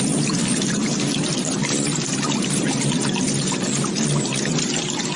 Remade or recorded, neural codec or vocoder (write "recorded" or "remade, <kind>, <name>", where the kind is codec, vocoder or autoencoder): recorded